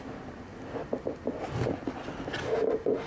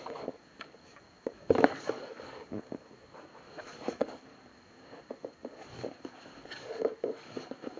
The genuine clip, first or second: first